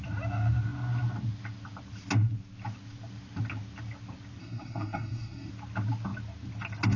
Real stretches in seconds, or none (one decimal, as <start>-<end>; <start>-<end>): 0.0-4.4; 5.5-7.0